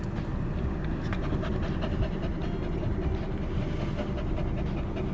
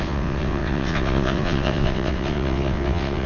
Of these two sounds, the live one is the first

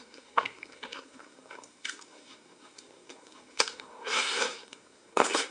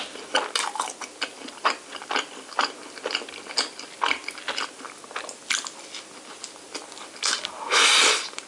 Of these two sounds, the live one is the second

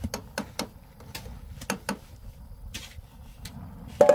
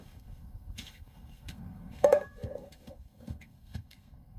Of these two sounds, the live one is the first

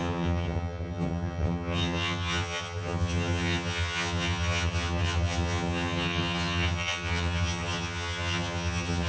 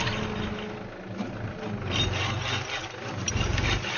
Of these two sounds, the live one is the second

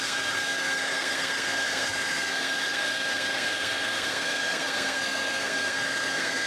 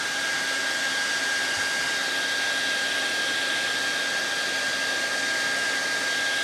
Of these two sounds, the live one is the second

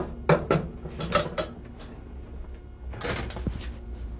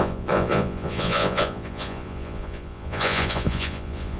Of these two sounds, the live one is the first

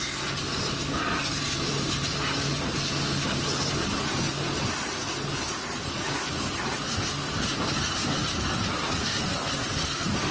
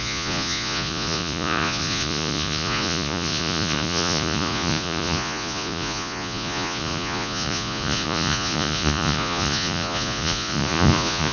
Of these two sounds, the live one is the first